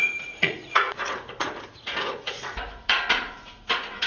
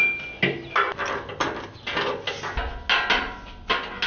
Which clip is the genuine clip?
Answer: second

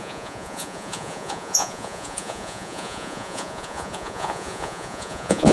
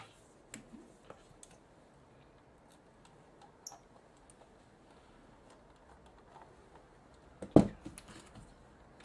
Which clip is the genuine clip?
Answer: second